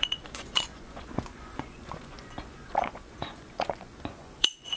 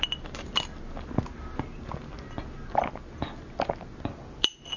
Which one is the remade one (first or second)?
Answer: first